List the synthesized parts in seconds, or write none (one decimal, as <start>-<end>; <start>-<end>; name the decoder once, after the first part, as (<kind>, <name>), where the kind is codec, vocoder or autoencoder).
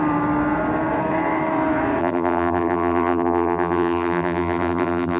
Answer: 2.0-5.2 (vocoder, BigVGAN v2)